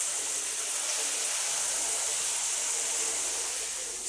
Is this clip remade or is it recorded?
recorded